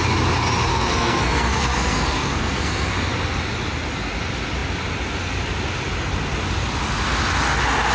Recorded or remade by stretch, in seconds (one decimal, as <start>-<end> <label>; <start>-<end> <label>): 0.0-0.7 recorded; 0.7-2.9 remade; 2.9-7.9 recorded